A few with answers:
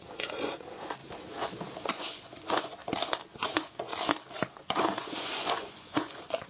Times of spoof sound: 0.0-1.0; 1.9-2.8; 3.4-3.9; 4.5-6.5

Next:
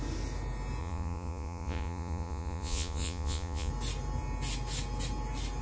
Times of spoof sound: 0.8-3.7

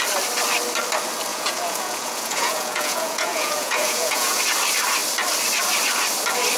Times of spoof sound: 1.3-4.4

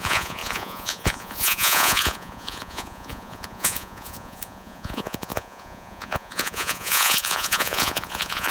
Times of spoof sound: 0.0-8.5